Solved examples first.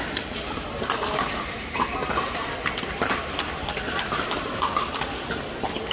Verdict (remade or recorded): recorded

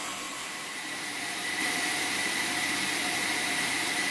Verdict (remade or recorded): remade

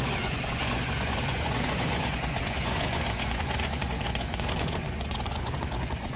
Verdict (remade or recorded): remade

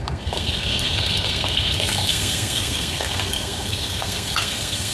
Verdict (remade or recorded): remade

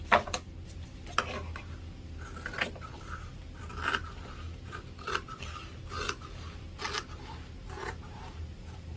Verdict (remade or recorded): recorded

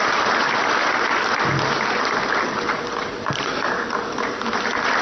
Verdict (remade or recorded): remade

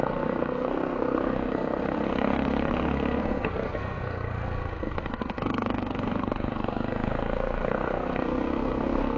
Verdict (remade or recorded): remade